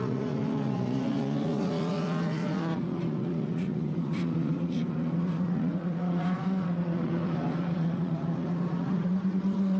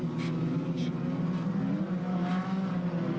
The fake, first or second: first